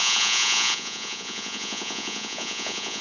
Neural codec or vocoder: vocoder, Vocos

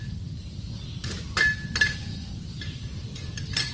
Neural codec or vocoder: none